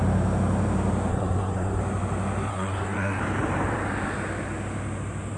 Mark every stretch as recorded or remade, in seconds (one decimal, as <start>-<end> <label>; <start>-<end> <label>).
0.0-1.1 recorded; 1.1-1.8 remade; 1.8-2.5 recorded; 2.5-3.2 remade; 3.2-5.4 recorded